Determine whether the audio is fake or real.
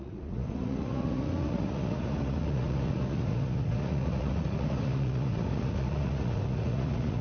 fake